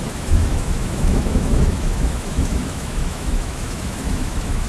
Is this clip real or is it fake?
fake